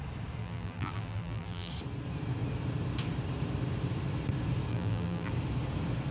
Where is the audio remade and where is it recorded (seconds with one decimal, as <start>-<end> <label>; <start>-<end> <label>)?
0.0-0.4 recorded; 0.4-1.7 remade; 1.7-4.7 recorded; 4.7-5.3 remade; 5.3-6.1 recorded